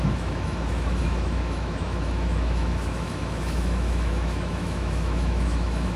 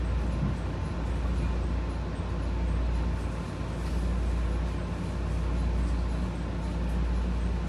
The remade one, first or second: first